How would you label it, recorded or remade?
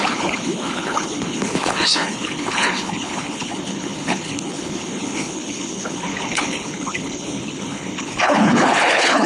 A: remade